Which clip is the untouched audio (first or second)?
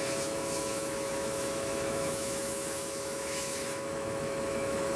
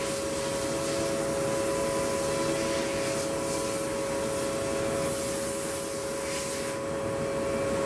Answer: second